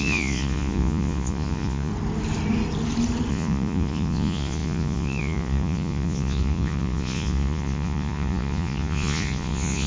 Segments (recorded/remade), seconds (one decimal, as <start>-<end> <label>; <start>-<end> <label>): 0.0-1.9 remade; 1.9-3.3 recorded; 3.3-9.9 remade